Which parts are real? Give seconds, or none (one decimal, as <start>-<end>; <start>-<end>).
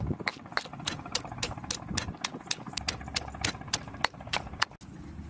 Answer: 0.0-5.3